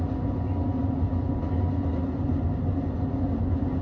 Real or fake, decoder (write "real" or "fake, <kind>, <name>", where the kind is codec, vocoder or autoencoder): real